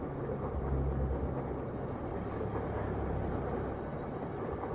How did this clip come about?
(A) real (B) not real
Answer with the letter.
A